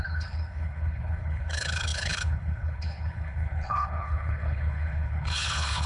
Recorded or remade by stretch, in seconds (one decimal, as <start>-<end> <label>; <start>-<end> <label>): 0.0-5.9 remade